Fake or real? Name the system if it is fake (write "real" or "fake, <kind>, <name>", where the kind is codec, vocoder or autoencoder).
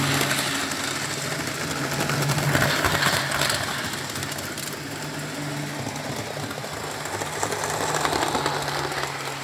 real